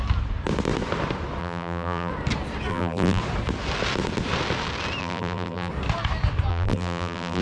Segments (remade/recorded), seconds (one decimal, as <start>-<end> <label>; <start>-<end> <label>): 0.0-1.4 recorded; 1.4-2.1 remade; 2.1-2.7 recorded; 2.7-3.2 remade; 3.2-5.0 recorded; 5.0-5.7 remade; 5.7-6.5 recorded; 6.5-7.4 remade